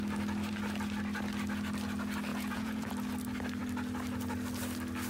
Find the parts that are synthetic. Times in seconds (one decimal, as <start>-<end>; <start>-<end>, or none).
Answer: 2.3-2.9